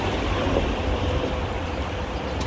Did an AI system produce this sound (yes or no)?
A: no